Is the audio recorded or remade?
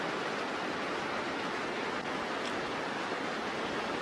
recorded